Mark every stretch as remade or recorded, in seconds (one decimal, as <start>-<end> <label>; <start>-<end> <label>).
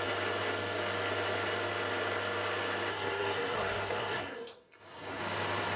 0.0-2.9 recorded; 2.9-5.2 remade; 5.2-5.8 recorded